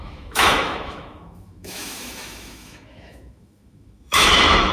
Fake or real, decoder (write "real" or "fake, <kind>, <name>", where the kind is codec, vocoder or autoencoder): fake, autoencoder, DAC-VAE